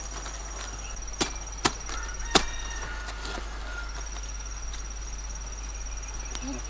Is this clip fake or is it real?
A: real